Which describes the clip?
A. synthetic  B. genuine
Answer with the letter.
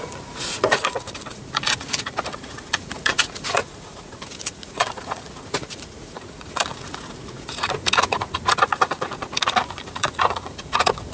A